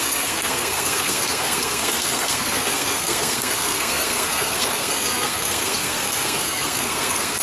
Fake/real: fake